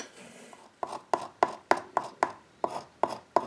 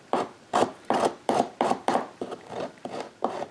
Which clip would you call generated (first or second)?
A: second